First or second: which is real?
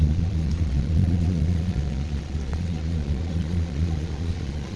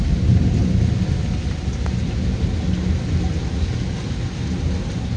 second